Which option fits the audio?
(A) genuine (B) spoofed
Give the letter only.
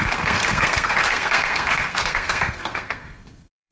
B